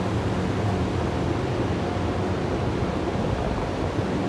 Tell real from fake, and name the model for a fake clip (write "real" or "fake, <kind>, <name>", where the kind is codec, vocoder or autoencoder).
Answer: real